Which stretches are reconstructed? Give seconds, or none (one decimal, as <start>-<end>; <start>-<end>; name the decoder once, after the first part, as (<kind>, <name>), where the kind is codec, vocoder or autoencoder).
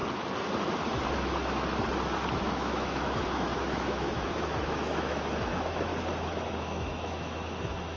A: 2.3-5.9 (autoencoder, DAC-VAE); 6.6-8.0